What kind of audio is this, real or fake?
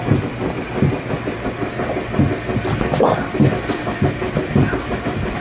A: real